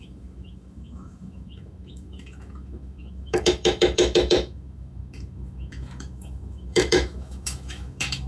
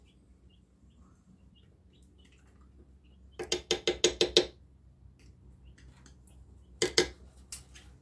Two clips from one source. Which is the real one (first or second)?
second